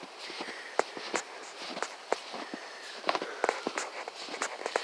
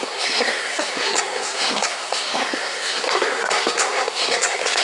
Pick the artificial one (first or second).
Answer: second